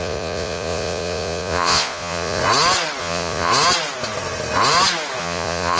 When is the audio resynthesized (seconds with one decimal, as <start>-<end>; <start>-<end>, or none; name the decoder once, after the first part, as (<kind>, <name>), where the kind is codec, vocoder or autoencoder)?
0.0-2.4 (vocoder, Vocos); 3.0-3.5; 5.2-5.8